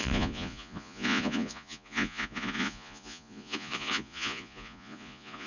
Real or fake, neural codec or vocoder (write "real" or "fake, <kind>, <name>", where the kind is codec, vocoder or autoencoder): fake, vocoder, Vocos